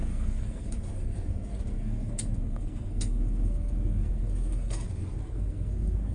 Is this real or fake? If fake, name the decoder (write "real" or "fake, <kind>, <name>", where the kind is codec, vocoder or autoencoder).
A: fake, codec, SNAC